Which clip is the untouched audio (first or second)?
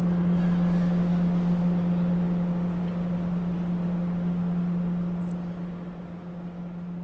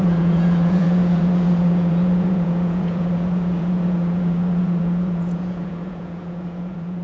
first